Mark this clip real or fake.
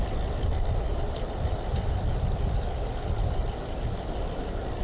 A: fake